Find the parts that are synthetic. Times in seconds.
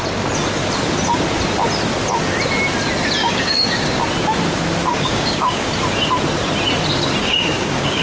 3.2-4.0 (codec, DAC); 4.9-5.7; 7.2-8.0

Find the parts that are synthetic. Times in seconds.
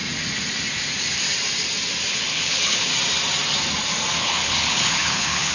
2.1-2.9 (codec, HILCodec); 4.2-5.5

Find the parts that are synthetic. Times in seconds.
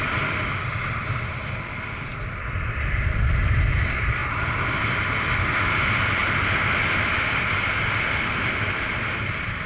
0.0-4.2 (vocoder, BigVGAN v2); 5.3-6.2; 7.2-9.7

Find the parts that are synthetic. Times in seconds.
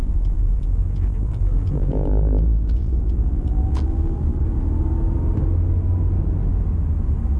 0.0-4.4 (vocoder, BigVGAN v2)